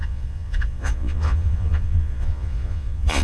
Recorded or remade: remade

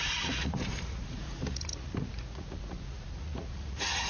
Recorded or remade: remade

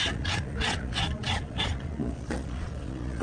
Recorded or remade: remade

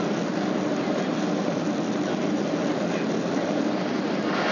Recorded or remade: recorded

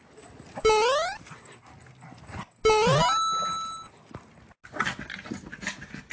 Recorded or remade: recorded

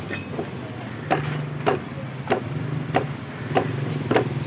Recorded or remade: recorded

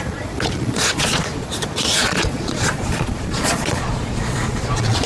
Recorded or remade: remade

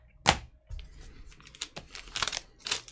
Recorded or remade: recorded